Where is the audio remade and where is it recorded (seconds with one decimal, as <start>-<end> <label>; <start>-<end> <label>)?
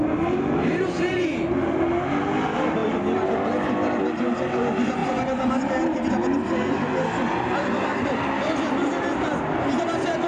0.0-2.8 recorded; 2.8-4.0 remade; 4.0-5.0 recorded; 5.0-6.1 remade; 6.1-10.3 recorded